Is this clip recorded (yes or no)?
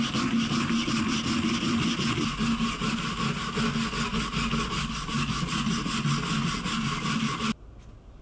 yes